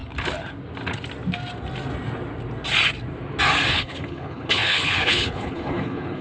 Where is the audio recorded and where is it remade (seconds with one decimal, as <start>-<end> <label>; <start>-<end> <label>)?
0.0-3.7 recorded; 3.7-6.2 remade